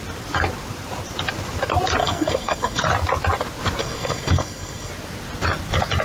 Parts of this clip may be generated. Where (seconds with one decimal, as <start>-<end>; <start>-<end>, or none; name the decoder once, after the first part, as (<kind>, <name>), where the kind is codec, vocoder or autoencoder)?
2.0-2.8 (codec, SNAC); 3.8-4.9